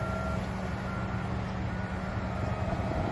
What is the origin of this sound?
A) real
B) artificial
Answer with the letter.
A